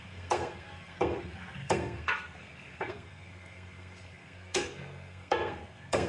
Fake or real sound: fake